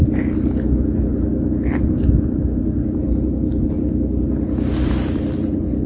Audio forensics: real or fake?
real